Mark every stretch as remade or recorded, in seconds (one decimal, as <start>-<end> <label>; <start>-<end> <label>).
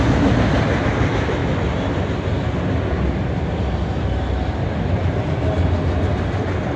0.0-6.8 recorded